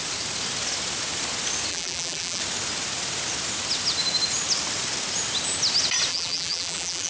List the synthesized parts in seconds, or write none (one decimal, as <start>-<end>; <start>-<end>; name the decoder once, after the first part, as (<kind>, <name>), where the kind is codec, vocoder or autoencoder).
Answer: 1.7-2.4 (vocoder, BigVGAN v2); 6.1-7.1